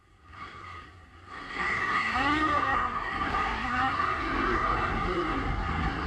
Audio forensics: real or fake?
fake